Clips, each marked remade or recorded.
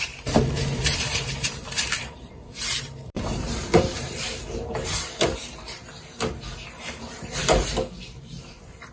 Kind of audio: remade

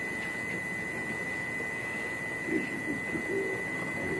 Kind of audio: remade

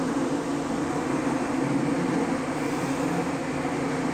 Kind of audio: recorded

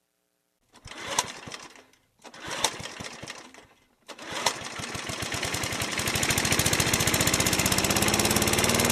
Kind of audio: recorded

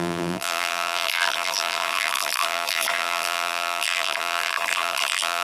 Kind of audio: remade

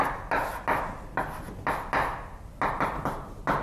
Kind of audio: recorded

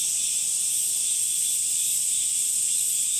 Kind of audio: remade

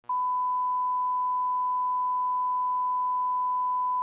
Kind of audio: recorded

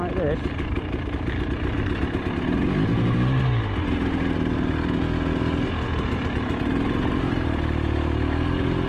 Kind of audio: recorded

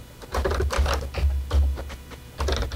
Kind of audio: recorded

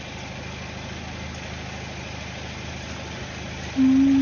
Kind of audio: recorded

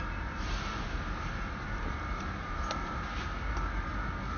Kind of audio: remade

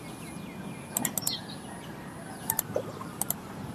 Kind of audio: recorded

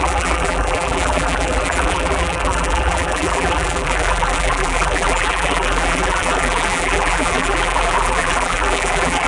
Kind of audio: remade